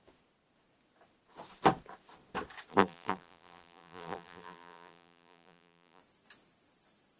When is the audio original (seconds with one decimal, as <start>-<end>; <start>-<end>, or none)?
0.0-2.7; 6.0-7.2